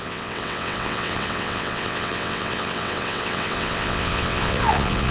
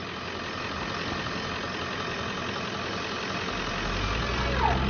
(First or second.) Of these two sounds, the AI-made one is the first